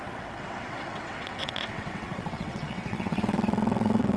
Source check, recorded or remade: remade